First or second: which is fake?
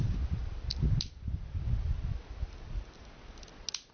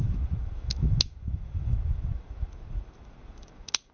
second